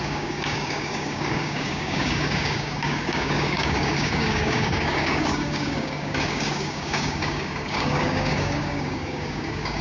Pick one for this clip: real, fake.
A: fake